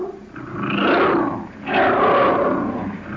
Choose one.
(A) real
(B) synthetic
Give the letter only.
A